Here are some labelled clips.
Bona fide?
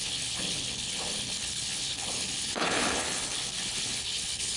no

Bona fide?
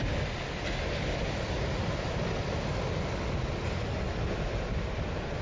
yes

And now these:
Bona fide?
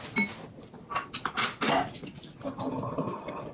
yes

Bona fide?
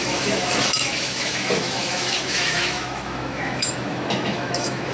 no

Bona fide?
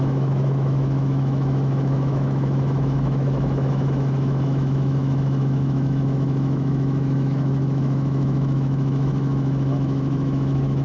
no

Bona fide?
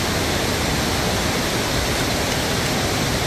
yes